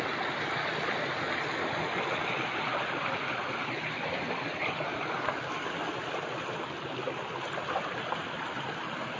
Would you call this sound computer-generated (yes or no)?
no